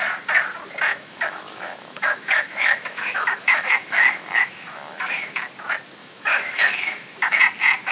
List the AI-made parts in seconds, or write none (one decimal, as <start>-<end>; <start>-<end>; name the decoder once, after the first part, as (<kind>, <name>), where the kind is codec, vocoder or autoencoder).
0.9-5.4 (autoencoder, DAC-VAE); 6.0-7.4